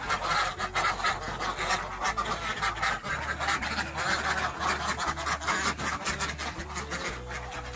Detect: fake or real real